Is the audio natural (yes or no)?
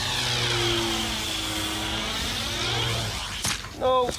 yes